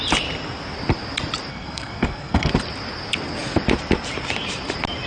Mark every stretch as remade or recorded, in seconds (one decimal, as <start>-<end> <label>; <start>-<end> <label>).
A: 0.0-1.5 recorded; 1.5-2.5 remade; 2.5-5.1 recorded